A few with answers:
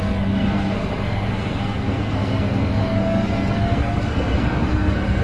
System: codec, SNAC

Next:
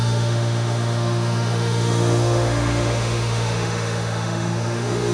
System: autoencoder, DAC-VAE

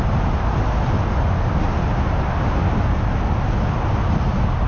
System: none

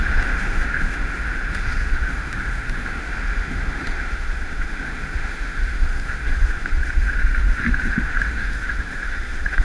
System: autoencoder, DAC-VAE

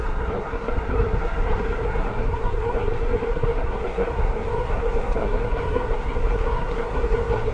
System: codec, SNAC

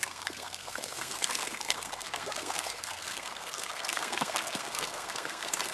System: codec, SNAC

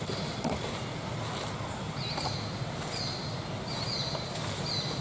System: none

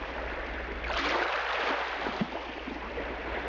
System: none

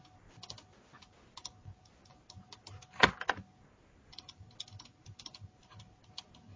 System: none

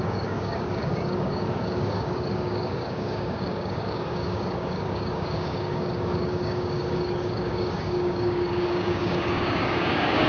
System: codec, DAC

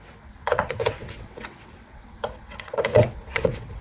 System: vocoder, WaveNeXt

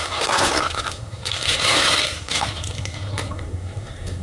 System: codec, SNAC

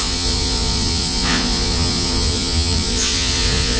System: vocoder, Vocos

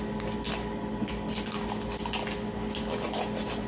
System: none